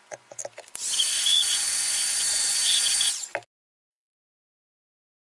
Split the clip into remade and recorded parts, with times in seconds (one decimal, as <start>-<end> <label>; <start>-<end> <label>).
0.0-0.4 remade; 0.4-1.1 recorded; 1.1-3.3 remade; 3.3-3.9 recorded; 3.9-5.3 remade